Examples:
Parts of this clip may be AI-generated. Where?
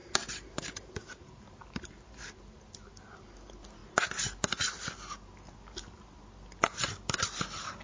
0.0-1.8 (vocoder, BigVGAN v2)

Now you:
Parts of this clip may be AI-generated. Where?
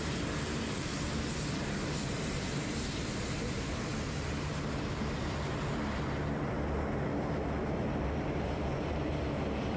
0.0-3.9 (vocoder, BigVGAN v2); 7.8-9.8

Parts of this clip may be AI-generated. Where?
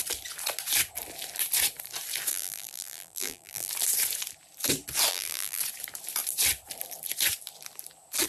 2.3-3.7 (vocoder, BigVGAN v2); 5.1-5.6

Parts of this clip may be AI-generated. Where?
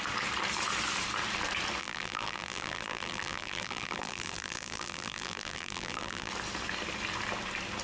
1.8-6.3 (vocoder, BigVGAN v2)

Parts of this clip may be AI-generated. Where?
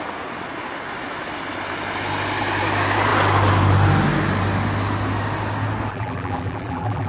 5.9-7.1 (vocoder, BigVGAN v2)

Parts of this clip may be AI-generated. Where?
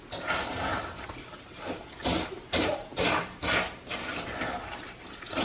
0.7-3.9 (vocoder, BigVGAN v2)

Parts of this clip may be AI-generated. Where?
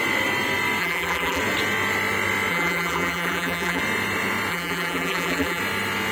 0.8-1.4 (vocoder, BigVGAN v2); 2.5-3.8; 4.5-5.6